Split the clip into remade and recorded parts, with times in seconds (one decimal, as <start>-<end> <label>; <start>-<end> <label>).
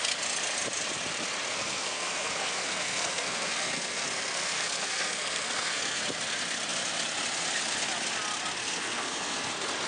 0.0-1.5 recorded; 1.5-6.0 remade; 6.0-8.6 recorded; 8.6-9.5 remade; 9.5-9.9 recorded